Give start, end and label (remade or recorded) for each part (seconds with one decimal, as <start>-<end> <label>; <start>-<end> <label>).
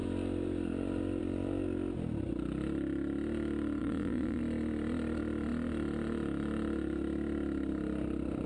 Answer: 0.0-3.8 recorded; 3.8-4.4 remade; 4.4-8.5 recorded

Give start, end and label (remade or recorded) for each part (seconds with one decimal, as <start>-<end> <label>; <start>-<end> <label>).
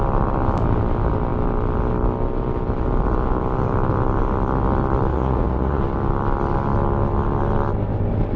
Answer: 0.0-5.1 recorded; 5.1-5.8 remade; 5.8-8.4 recorded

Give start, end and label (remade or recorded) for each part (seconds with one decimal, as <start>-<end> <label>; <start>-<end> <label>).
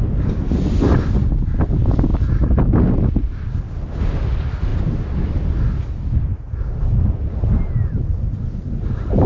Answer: 0.0-9.3 recorded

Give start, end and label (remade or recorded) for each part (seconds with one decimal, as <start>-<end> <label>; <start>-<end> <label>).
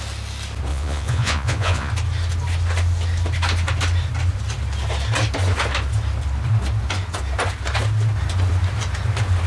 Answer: 0.0-0.7 recorded; 0.7-1.9 remade; 1.9-9.5 recorded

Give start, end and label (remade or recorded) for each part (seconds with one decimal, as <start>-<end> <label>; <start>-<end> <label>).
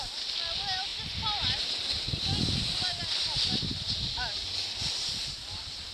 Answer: 0.0-5.9 recorded